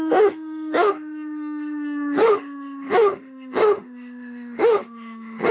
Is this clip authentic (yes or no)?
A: no